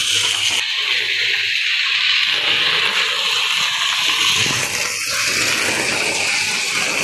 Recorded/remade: recorded